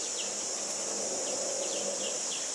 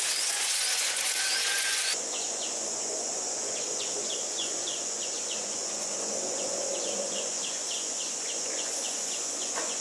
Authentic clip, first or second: first